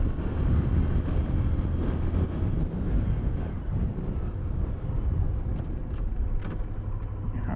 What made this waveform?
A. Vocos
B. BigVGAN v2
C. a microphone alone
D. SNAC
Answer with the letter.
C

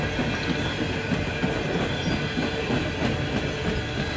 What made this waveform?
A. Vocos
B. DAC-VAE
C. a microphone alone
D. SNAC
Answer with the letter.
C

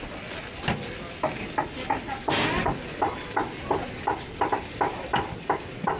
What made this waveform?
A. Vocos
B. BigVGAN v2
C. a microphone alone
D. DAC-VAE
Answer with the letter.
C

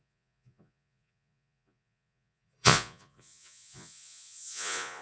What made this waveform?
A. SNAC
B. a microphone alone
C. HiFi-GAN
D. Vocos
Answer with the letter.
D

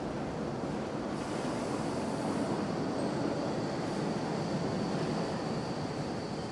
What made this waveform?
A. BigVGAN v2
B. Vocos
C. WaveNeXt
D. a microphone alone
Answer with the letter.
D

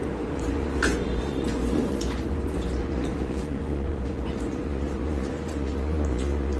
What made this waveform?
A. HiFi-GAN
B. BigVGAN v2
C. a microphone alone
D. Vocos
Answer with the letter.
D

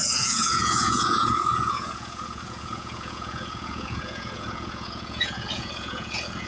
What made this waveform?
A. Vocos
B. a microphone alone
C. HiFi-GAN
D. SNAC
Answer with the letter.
A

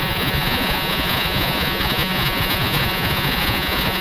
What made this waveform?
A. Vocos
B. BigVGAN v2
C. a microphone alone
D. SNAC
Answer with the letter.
A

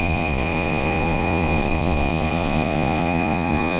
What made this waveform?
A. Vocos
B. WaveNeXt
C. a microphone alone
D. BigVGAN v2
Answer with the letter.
A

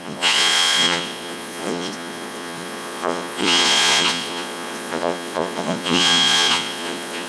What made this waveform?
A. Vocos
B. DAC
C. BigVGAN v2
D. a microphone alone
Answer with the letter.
A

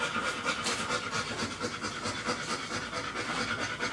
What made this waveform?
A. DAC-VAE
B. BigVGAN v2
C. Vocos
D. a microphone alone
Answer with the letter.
D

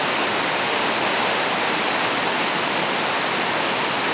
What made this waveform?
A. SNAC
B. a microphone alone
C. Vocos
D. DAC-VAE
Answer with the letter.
B